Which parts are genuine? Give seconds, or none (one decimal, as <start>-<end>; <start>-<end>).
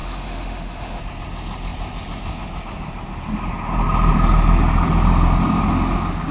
1.0-6.3